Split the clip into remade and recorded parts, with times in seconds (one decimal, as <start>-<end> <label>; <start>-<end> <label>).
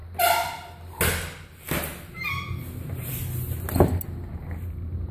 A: 0.0-5.1 recorded